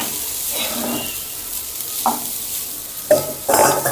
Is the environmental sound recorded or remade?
recorded